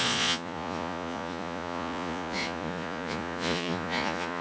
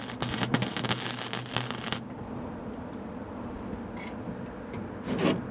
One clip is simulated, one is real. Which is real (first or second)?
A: second